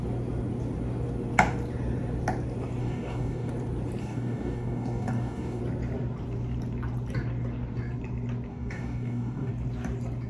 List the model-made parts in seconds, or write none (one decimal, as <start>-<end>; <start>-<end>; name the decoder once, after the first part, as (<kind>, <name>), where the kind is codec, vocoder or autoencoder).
2.8-3.5 (codec, DAC); 4.0-5.6; 8.5-9.5